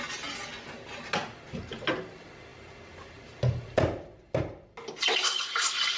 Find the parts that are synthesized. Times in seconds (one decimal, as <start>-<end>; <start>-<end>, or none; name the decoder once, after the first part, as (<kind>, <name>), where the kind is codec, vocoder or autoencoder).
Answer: none